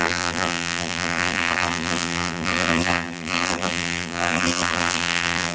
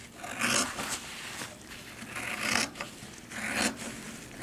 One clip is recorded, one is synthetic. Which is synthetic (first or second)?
first